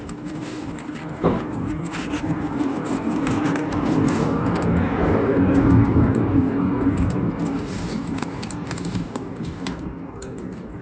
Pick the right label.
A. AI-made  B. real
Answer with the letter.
A